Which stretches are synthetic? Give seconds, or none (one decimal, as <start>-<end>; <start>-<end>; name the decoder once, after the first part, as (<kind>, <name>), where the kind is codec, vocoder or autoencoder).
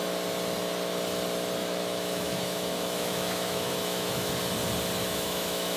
1.6-4.3 (autoencoder, DAC-VAE); 5.0-5.8